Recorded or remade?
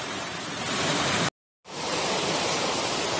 recorded